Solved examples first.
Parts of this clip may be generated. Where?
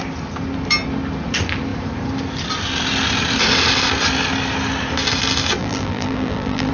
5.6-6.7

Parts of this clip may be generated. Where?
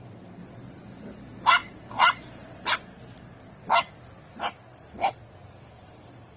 none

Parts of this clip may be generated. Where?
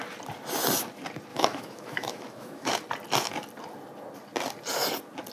1.3-2.7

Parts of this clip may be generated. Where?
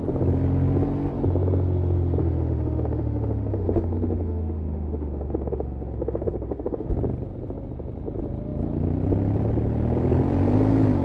2.2-6.9